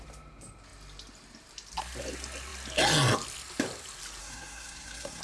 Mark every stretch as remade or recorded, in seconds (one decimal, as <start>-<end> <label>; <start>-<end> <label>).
0.0-4.2 recorded; 4.2-5.2 remade